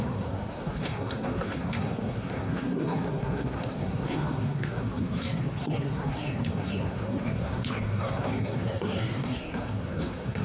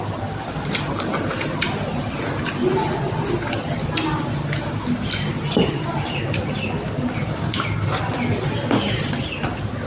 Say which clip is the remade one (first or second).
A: first